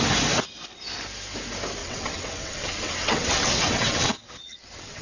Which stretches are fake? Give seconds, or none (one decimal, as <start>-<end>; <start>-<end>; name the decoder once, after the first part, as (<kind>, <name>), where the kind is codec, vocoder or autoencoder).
1.8-5.0 (vocoder, WaveNeXt)